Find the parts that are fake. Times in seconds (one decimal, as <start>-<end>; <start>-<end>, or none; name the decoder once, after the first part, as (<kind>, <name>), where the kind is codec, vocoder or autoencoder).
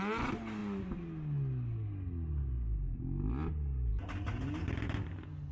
none